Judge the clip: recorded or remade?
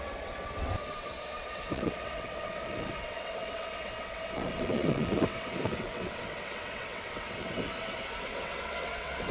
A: remade